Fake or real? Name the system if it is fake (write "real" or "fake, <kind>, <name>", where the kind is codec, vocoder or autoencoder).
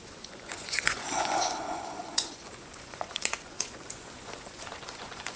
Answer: fake, vocoder, Vocos